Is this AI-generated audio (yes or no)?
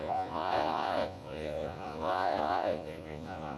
yes